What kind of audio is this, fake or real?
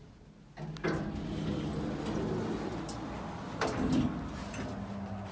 real